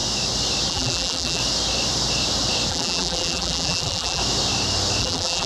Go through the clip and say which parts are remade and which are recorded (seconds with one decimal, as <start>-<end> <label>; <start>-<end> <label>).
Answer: 0.0-0.7 recorded; 0.7-1.4 remade; 1.4-2.7 recorded; 2.7-4.2 remade; 4.2-5.0 recorded; 5.0-5.5 remade